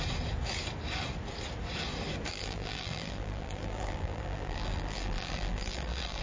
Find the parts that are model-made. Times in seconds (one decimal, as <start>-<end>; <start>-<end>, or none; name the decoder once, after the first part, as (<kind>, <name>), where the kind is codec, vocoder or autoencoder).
2.3-6.2 (vocoder, BigVGAN v2)